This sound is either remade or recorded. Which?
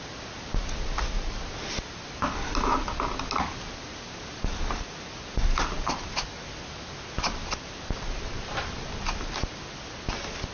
recorded